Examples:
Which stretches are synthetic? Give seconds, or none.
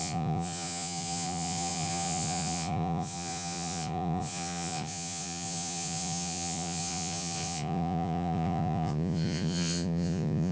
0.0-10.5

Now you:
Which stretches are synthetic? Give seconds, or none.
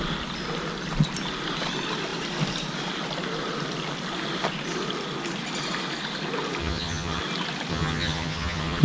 6.6-7.2; 7.7-8.8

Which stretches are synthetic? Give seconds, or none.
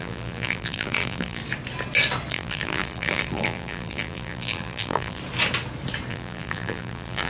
0.0-1.4; 2.3-5.2; 6.1-7.3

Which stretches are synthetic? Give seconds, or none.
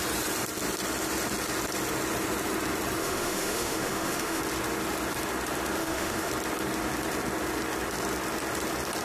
3.0-4.4; 5.8-6.3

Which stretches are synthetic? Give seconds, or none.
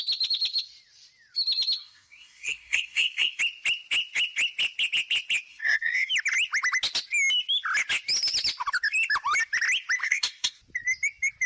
1.8-3.4; 5.5-6.1; 10.0-10.6